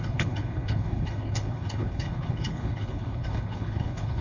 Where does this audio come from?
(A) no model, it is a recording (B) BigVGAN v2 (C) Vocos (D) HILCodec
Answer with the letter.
D